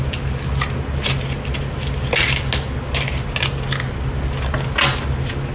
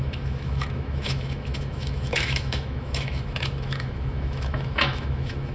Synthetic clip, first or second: second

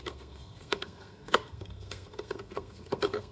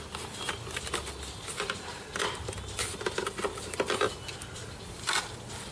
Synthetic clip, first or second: first